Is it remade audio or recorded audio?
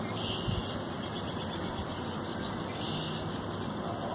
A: recorded